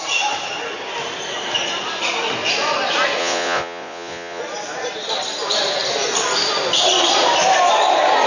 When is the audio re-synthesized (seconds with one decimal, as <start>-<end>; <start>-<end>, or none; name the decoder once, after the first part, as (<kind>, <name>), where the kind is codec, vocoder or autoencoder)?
3.2-4.4 (vocoder, Vocos)